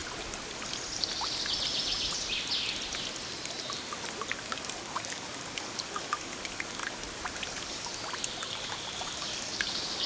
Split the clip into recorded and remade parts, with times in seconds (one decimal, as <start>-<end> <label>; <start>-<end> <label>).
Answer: 0.0-4.3 recorded; 4.3-6.8 remade; 6.8-7.5 recorded; 7.5-7.9 remade; 7.9-8.4 recorded; 8.4-10.1 remade